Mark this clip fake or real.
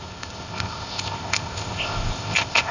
fake